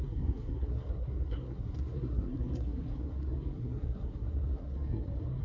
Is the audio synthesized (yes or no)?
yes